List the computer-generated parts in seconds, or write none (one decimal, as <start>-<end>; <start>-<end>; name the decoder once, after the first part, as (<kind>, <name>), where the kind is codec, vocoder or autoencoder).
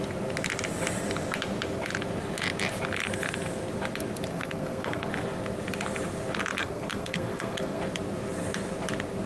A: 4.3-5.1 (codec, SNAC); 6.6-7.8